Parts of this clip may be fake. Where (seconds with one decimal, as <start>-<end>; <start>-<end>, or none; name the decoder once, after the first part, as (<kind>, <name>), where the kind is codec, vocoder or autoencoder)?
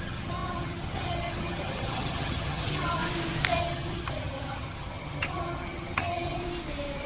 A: 0.0-3.0 (vocoder, HiFi-GAN); 3.6-6.4